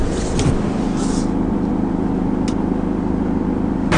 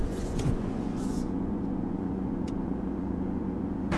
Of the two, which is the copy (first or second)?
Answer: second